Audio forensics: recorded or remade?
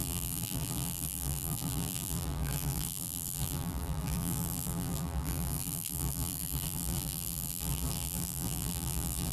remade